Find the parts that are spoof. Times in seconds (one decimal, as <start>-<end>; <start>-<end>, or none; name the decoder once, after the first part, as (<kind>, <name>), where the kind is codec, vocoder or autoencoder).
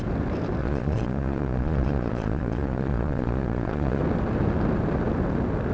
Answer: 0.6-4.0 (vocoder, Vocos)